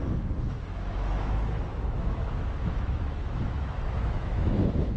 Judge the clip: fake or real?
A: fake